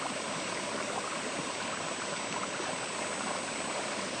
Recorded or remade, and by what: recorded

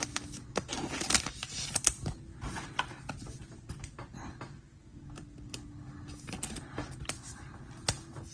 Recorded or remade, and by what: recorded